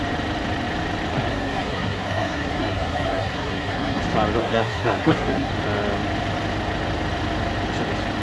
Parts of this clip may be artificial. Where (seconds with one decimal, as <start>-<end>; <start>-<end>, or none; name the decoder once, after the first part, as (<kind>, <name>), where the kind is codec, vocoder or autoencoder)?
1.3-4.0 (codec, SNAC); 4.4-5.5

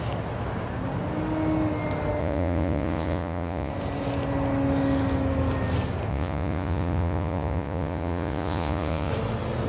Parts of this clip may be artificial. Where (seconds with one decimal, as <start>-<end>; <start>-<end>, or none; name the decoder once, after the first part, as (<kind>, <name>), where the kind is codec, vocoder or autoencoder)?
2.2-3.7 (vocoder, Vocos); 6.1-9.1